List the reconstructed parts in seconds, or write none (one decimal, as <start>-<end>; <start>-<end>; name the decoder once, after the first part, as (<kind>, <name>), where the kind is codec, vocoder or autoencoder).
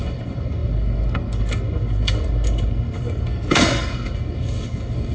0.0-5.1 (codec, SNAC)